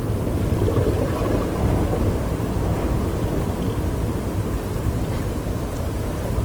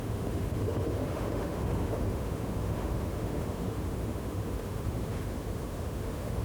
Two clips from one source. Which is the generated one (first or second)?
second